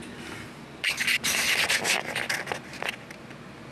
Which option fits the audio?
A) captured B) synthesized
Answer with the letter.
A